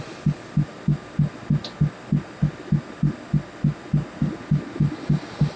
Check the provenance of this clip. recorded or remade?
recorded